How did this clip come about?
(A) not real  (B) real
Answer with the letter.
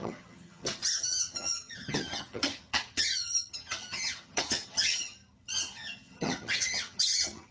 A